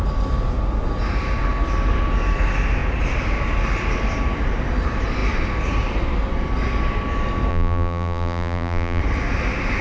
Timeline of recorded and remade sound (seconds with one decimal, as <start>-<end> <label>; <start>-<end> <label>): 0.0-7.5 recorded; 7.5-9.0 remade; 9.0-9.8 recorded